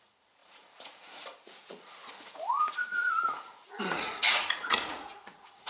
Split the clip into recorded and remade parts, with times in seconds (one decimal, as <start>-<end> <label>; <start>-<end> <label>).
0.0-5.7 remade